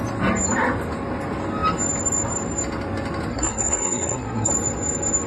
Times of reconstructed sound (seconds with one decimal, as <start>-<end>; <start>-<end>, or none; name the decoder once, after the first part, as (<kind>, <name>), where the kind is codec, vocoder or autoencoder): 3.3-4.5 (codec, SNAC)